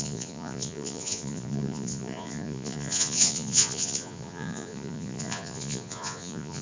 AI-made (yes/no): yes